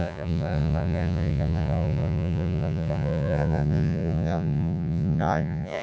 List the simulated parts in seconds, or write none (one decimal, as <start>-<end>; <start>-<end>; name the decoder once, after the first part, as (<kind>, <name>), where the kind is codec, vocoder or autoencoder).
0.0-5.8 (vocoder, Vocos)